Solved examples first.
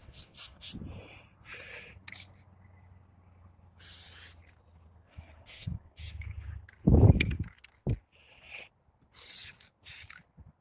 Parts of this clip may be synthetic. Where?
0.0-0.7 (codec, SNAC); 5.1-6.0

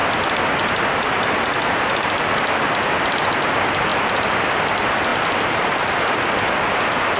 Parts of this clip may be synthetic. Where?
none

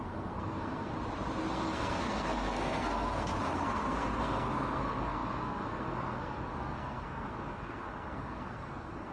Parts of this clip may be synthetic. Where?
0.0-0.9 (codec, SNAC); 1.5-9.1

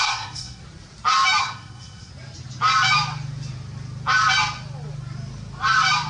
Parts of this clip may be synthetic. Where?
0.0-0.6 (codec, SNAC); 1.4-2.1

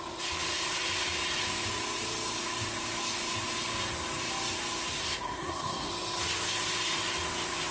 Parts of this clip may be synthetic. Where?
4.9-5.9 (codec, SNAC)